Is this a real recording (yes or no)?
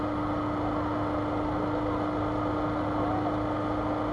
yes